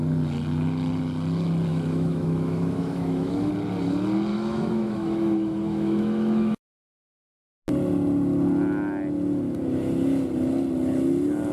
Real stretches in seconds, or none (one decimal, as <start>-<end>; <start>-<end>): 0.0-1.7; 3.5-4.3; 7.4-11.5